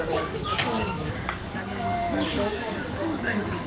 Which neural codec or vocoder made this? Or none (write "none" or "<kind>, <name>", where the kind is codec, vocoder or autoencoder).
codec, DAC